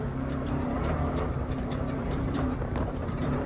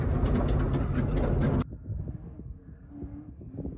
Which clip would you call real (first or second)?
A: second